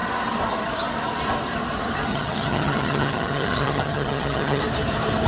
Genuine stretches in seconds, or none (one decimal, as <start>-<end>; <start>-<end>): 0.0-2.1; 4.6-5.3